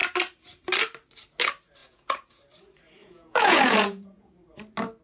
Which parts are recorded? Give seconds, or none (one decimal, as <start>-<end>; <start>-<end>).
0.0-1.8; 2.4-3.0; 4.3-5.0